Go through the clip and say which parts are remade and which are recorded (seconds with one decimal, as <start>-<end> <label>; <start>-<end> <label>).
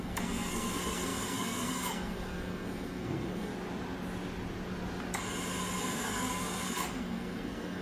0.0-3.5 remade; 3.5-5.8 recorded; 5.8-7.8 remade